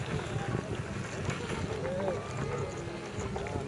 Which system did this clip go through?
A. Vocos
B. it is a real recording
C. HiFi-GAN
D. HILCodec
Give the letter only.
B